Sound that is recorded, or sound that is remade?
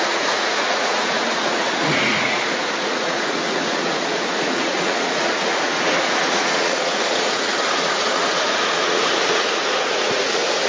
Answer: remade